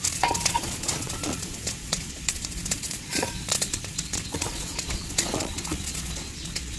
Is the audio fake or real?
fake